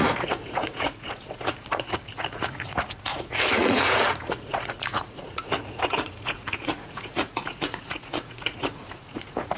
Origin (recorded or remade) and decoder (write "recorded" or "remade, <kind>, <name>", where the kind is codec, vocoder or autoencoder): remade, vocoder, Vocos